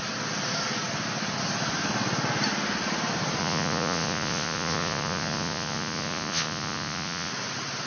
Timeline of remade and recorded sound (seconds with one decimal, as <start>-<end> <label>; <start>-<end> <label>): 0.0-3.4 recorded; 3.4-7.3 remade; 7.3-7.9 recorded